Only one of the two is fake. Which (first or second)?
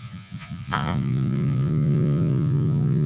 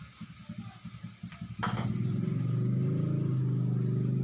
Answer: first